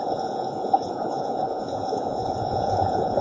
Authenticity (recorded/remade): remade